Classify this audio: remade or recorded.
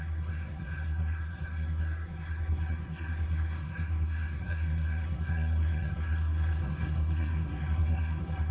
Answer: remade